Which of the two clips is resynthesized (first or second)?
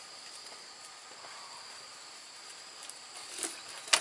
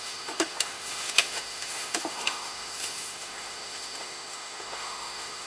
second